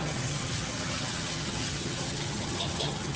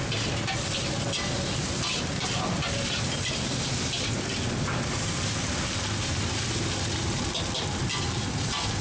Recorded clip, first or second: second